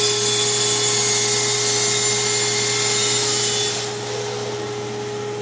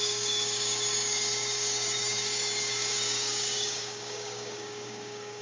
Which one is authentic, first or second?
first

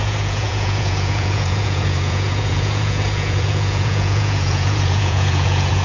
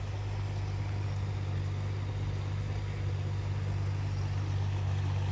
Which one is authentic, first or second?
second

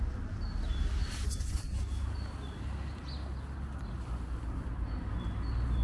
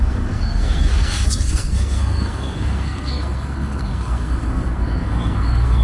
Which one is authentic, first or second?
first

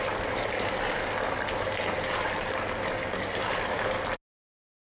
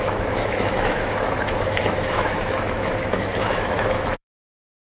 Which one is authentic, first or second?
first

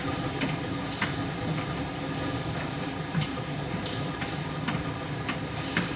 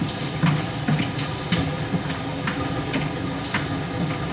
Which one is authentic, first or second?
second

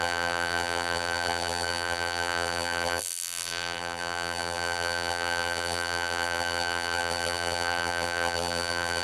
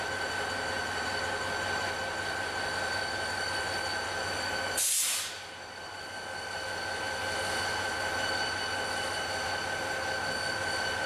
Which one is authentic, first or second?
second